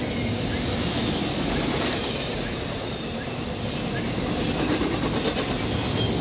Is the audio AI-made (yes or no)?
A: no